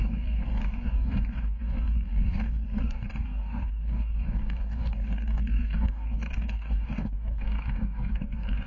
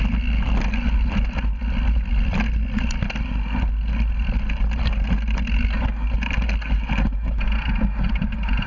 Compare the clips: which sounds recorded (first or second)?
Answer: second